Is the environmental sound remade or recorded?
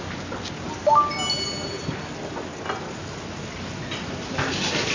recorded